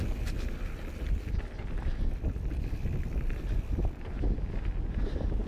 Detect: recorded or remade recorded